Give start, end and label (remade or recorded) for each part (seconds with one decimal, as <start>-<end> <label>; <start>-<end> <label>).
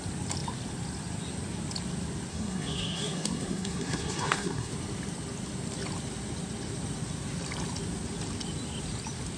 0.0-2.3 recorded; 2.3-4.7 remade; 4.7-9.4 recorded